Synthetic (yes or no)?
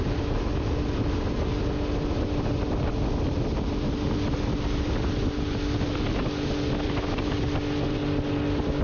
no